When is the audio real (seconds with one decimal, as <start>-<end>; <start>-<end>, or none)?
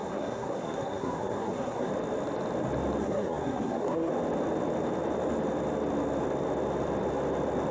1.9-3.0; 4.1-7.7